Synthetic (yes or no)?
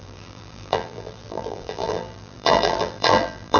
yes